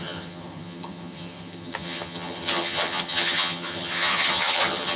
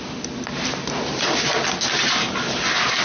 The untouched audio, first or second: second